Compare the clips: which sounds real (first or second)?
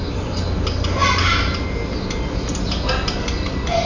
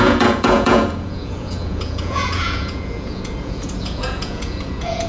first